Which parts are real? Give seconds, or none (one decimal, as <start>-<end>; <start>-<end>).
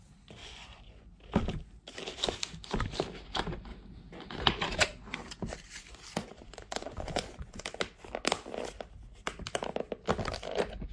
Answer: 0.0-0.4; 1.1-6.2; 7.6-10.9